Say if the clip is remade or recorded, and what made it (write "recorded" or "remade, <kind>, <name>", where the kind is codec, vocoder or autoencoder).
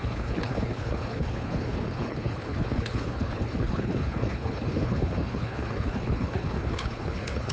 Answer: remade, codec, HILCodec